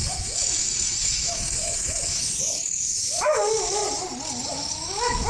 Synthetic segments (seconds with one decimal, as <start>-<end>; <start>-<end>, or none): 0.0-3.8; 4.5-5.3

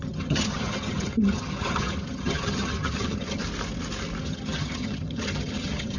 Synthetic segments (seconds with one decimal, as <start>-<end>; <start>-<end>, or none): 0.0-3.4; 4.2-6.0

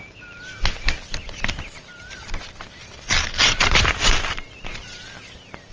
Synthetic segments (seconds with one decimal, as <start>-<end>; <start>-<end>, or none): none

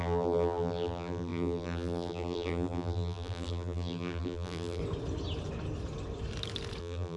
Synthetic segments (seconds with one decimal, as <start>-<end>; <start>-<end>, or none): 0.0-4.8; 6.8-7.2

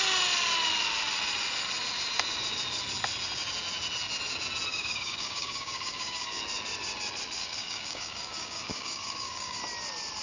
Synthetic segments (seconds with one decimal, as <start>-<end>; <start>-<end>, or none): 4.7-6.4; 7.4-9.6

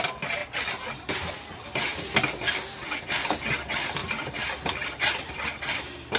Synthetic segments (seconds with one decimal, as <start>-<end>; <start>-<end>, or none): none